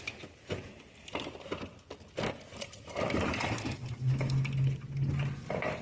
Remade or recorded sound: recorded